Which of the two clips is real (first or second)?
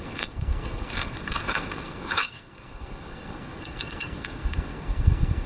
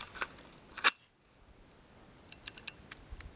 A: second